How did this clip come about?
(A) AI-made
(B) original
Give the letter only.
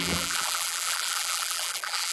A